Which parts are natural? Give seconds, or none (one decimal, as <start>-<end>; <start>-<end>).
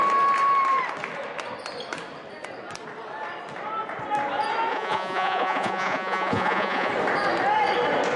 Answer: 0.0-4.7; 6.9-8.2